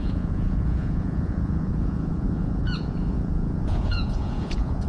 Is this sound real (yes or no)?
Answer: no